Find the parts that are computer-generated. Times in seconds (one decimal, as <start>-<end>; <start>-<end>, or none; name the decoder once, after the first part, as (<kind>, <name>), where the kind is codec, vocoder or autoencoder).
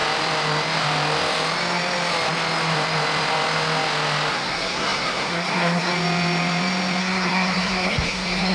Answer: 4.3-5.9 (codec, SNAC); 7.0-8.5